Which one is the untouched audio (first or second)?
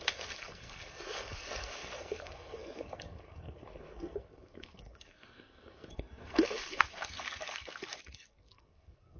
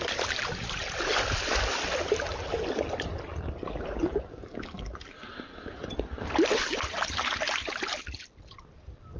second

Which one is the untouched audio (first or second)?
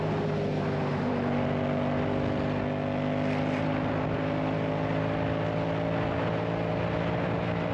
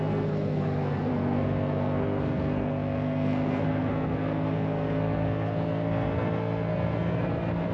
first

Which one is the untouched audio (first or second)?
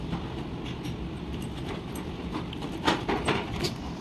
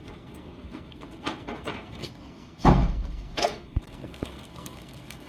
first